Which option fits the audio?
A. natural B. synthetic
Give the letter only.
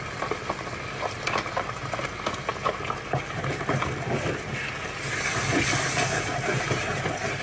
A